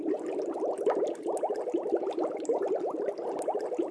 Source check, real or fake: real